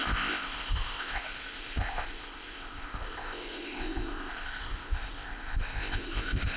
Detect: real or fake fake